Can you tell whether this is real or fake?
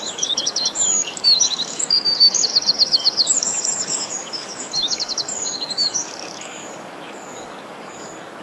fake